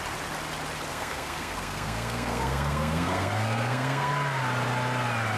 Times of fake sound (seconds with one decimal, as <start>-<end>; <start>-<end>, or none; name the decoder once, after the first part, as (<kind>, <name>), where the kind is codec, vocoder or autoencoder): 0.9-4.1 (codec, SNAC)